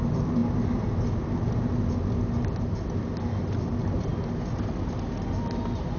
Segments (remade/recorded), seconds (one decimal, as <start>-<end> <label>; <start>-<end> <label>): 0.0-6.0 recorded